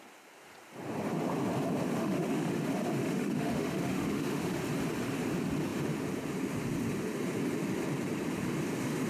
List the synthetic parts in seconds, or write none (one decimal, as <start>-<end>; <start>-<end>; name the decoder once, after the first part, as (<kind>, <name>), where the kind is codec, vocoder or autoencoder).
2.0-2.6 (autoencoder, DAC-VAE); 3.0-4.6